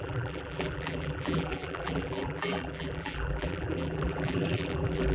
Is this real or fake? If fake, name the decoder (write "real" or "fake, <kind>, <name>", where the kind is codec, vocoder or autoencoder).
fake, vocoder, BigVGAN v2